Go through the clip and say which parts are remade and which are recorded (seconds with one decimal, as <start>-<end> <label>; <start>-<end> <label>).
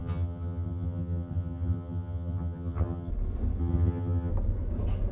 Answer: 0.0-3.1 remade; 3.1-3.6 recorded; 3.6-4.3 remade; 4.3-5.1 recorded